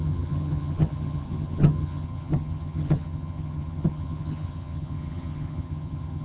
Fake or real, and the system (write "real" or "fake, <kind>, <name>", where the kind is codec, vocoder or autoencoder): fake, vocoder, HiFi-GAN